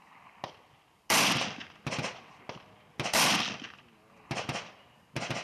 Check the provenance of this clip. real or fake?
real